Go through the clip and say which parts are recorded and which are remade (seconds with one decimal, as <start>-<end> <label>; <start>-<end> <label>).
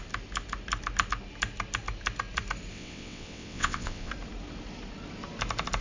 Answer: 0.0-2.7 recorded; 2.7-4.1 remade; 4.1-5.8 recorded